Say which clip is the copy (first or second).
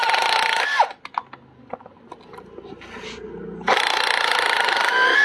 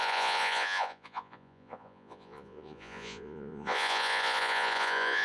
second